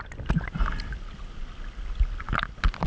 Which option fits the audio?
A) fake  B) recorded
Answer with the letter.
B